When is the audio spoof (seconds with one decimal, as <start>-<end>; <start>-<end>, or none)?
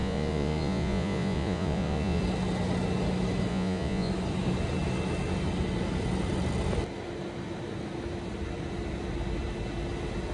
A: 0.0-2.2; 3.5-4.1